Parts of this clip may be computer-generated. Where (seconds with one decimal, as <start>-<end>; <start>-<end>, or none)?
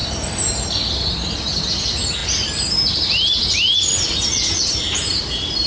none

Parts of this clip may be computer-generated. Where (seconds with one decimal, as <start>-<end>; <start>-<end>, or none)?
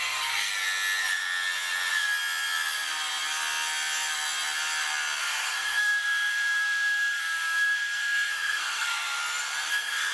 0.0-0.5; 5.2-9.2; 9.7-10.1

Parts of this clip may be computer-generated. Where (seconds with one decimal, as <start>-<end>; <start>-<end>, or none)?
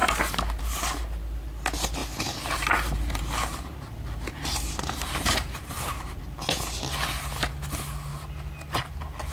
0.0-0.6; 2.0-6.2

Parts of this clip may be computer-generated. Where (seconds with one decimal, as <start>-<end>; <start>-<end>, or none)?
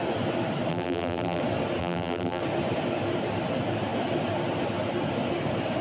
0.7-1.4; 1.8-2.4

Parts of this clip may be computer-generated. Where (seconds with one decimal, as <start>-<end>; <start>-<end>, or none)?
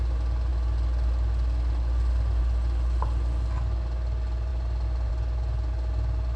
none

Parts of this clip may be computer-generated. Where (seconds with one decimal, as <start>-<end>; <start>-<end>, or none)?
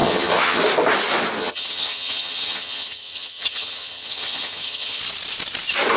0.0-0.6; 1.4-5.0